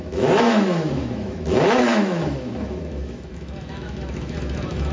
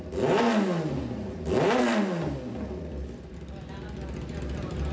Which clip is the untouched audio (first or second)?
second